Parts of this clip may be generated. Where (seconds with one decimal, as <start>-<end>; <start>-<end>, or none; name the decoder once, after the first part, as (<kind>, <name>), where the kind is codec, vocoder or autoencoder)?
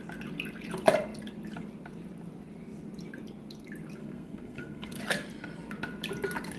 4.0-5.0 (codec, SNAC)